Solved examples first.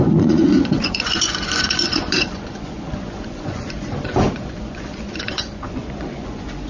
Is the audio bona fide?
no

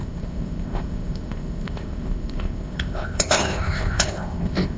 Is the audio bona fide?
no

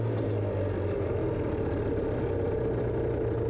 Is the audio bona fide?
yes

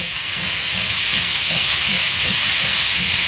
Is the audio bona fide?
no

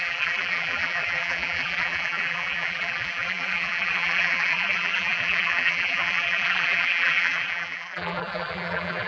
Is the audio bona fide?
no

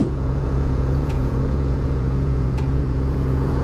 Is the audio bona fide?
no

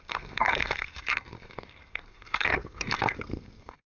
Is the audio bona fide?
no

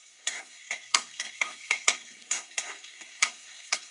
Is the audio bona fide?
no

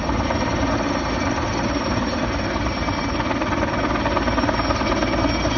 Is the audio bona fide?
yes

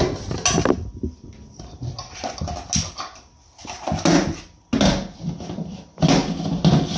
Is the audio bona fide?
yes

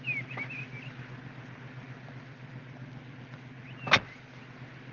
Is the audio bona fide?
yes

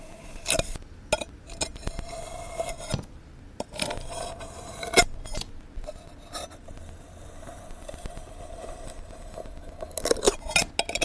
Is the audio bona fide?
yes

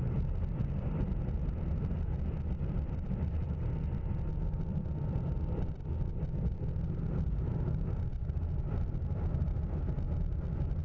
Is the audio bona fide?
yes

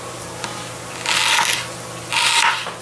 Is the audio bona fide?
yes